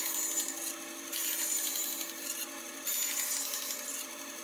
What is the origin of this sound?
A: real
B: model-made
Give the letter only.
A